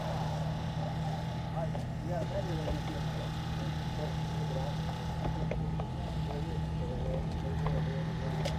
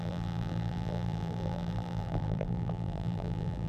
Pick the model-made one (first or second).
second